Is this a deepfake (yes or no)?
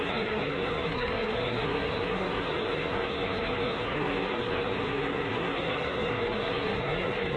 yes